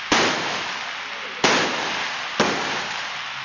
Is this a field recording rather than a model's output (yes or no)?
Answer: yes